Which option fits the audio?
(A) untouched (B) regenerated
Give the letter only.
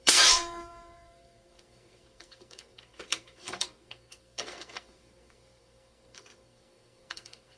B